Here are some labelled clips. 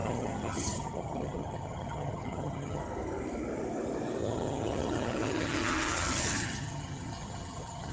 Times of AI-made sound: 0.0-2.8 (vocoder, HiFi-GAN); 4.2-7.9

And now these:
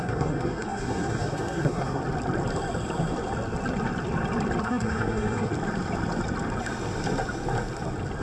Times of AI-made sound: 0.0-2.0 (codec, SNAC); 4.6-5.5

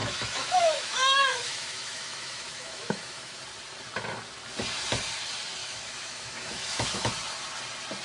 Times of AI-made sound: 0.0-3.4 (autoencoder, DAC-VAE); 5.6-7.1

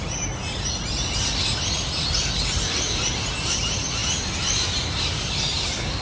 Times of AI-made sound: none

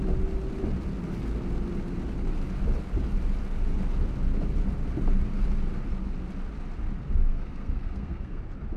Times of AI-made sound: 7.3-8.4 (codec, SNAC)

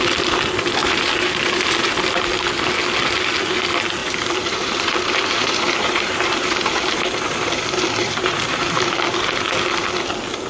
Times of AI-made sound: 0.8-1.6 (vocoder, BigVGAN v2); 4.0-8.9

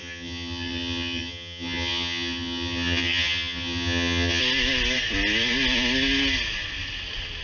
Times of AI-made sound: 0.0-4.4 (vocoder, HiFi-GAN)

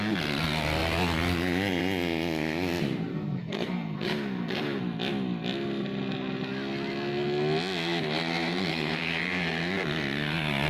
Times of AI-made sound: 3.1-4.8 (codec, SNAC); 8.7-9.2